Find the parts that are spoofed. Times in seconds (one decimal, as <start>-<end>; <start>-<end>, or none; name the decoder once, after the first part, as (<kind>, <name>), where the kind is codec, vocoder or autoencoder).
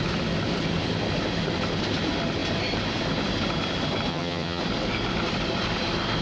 4.1-4.6 (vocoder, HiFi-GAN)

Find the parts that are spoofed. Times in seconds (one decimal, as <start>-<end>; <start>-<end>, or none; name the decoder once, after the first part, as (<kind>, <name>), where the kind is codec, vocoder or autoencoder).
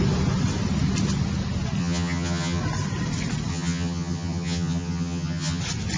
1.8-2.6 (vocoder, HiFi-GAN); 3.5-5.6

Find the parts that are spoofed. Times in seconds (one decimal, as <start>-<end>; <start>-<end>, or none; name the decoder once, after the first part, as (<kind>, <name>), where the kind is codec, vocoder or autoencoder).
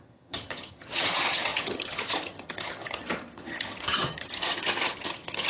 0.0-5.5 (vocoder, HiFi-GAN)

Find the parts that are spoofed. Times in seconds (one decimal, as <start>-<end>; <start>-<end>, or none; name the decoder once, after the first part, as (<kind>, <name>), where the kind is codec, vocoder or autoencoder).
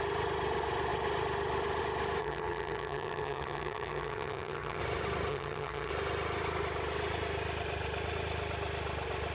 2.2-4.8 (vocoder, HiFi-GAN); 5.3-5.9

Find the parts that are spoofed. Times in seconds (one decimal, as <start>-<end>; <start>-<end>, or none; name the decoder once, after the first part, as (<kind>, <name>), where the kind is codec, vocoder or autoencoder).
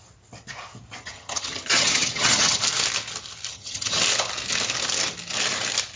1.0-2.6 (vocoder, HiFi-GAN); 3.5-4.0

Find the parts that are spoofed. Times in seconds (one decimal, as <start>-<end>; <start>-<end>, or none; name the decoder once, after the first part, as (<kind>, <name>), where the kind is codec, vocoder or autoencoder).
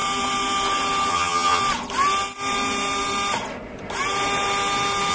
1.1-1.6 (vocoder, HiFi-GAN)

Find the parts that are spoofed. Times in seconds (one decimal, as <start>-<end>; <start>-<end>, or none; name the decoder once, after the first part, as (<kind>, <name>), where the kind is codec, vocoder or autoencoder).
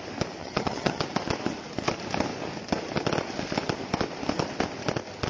0.4-1.0 (vocoder, HiFi-GAN)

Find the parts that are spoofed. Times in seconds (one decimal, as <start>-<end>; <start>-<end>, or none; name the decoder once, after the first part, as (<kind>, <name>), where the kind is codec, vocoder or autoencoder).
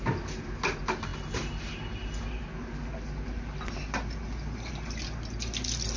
none